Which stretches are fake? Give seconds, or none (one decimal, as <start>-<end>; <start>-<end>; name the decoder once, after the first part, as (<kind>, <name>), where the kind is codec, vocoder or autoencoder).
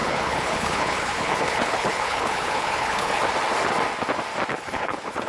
0.0-3.2 (codec, HILCodec); 4.5-5.3